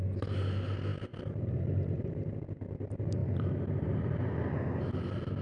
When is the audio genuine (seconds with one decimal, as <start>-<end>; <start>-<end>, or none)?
0.0-5.4